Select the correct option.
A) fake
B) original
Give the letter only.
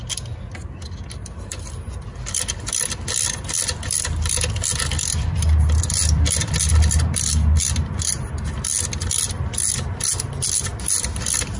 B